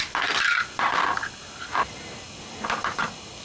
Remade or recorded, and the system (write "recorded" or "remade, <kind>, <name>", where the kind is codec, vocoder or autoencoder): recorded